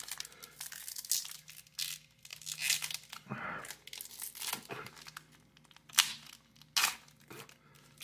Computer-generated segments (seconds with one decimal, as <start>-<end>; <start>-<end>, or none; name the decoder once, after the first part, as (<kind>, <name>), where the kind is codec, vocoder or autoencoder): none